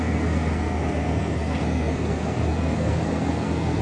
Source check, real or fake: fake